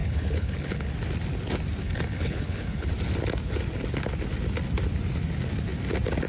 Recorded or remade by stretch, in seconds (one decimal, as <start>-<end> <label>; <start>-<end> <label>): 0.0-0.9 remade; 0.9-1.8 recorded; 1.8-2.9 remade; 2.9-6.3 recorded